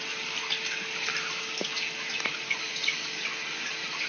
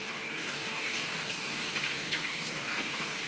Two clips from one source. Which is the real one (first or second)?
first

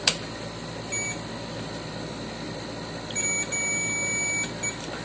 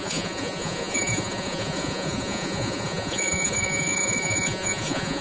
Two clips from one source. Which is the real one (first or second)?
first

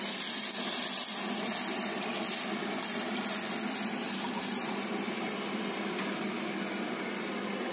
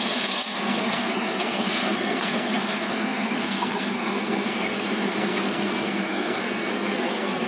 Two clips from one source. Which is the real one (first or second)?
first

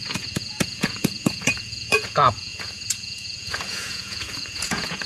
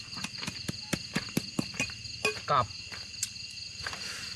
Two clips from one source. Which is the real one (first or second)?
second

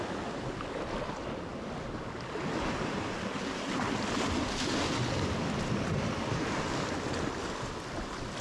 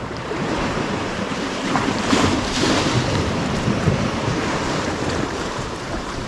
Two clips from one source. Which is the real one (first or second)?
first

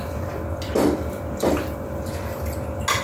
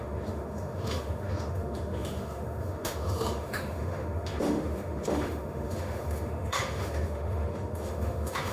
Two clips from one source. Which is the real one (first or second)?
first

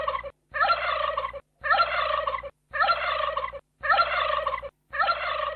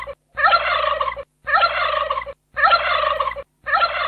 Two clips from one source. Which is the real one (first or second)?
second